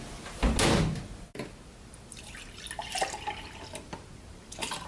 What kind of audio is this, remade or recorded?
recorded